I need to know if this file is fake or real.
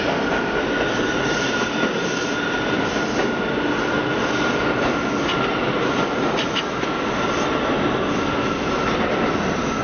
real